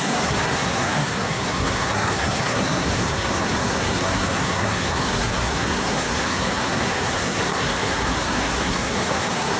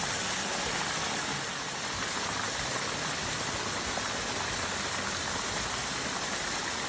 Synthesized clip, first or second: first